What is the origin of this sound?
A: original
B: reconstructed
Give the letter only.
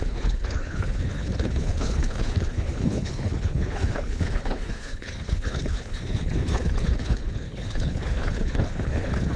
B